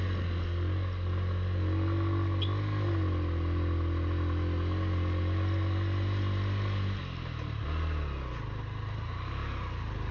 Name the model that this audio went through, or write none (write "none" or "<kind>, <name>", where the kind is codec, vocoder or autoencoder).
none